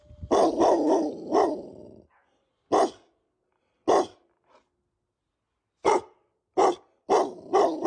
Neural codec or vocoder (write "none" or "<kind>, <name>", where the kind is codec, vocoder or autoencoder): none